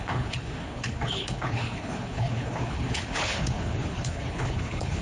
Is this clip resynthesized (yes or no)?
yes